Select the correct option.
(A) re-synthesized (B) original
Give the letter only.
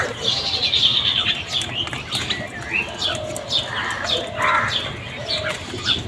B